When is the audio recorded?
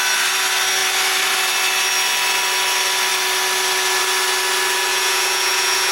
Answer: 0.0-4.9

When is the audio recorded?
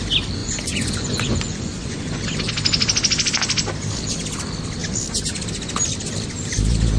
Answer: 0.0-0.4; 2.2-7.0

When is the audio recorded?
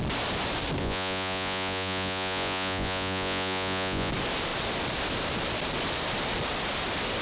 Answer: 0.0-0.8; 4.1-7.2